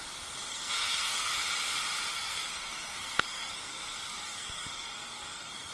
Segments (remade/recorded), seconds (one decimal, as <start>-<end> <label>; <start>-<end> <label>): 0.0-0.5 recorded; 0.5-1.3 remade; 1.3-2.1 recorded; 2.1-5.7 remade